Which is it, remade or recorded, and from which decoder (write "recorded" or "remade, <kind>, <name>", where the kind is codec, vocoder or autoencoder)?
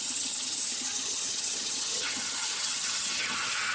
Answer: remade, vocoder, HiFi-GAN